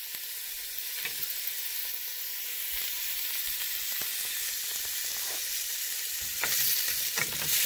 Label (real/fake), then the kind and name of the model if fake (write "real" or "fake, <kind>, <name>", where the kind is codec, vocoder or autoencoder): real